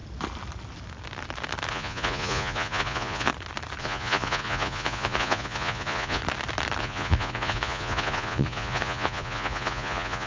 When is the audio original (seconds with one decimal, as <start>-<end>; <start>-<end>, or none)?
0.0-1.7; 3.3-3.8; 6.2-6.8